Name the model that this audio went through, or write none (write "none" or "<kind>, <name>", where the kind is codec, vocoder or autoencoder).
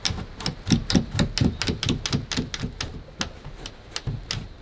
none